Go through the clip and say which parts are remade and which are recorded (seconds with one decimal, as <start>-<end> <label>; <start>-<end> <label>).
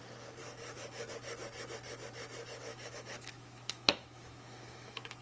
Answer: 0.0-0.4 recorded; 0.4-1.1 remade; 1.1-2.7 recorded; 2.7-5.2 remade